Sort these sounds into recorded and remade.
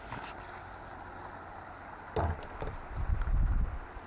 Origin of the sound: recorded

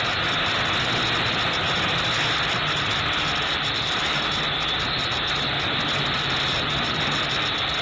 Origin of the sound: recorded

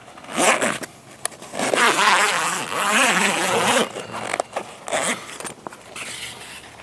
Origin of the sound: recorded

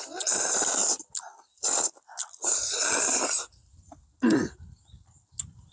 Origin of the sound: recorded